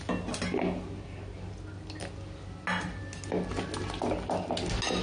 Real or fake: real